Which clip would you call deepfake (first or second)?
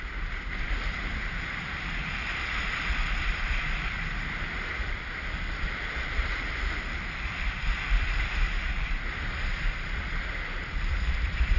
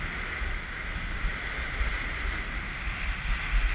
first